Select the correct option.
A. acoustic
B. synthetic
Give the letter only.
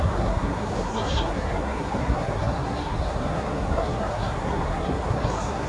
B